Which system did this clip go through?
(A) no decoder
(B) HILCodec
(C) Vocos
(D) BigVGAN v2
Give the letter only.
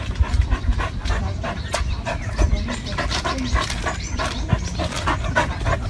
A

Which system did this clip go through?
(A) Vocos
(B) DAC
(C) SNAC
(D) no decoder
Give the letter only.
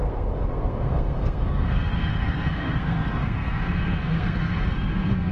C